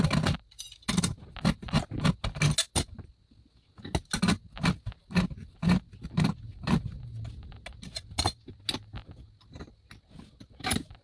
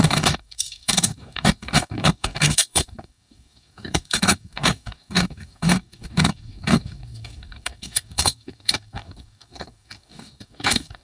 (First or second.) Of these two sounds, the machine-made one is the second